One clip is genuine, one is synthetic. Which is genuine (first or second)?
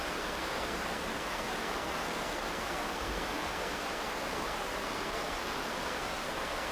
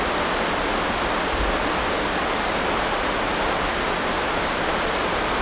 second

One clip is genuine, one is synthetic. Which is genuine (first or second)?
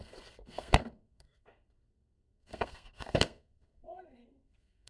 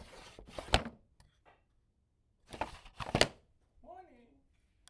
second